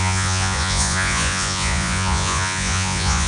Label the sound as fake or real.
fake